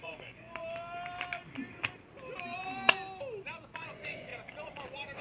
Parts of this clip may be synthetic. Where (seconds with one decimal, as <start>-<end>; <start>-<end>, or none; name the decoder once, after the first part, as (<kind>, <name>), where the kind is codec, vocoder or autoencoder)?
0.0-0.6 (vocoder, Vocos); 3.7-4.3